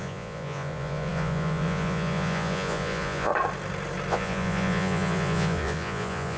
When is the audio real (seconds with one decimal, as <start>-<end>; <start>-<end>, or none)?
3.3-4.1